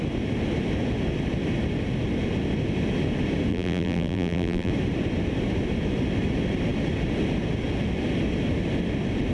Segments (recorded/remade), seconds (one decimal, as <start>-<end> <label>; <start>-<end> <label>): 0.0-3.5 recorded; 3.5-4.7 remade; 4.7-9.3 recorded